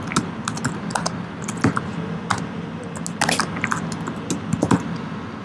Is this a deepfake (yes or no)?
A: no